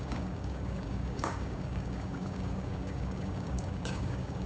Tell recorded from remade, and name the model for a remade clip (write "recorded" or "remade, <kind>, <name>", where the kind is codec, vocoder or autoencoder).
remade, codec, DAC